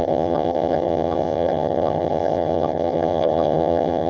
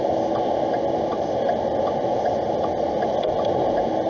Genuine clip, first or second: second